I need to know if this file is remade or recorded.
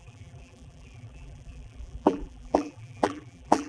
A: remade